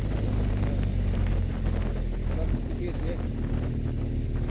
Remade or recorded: recorded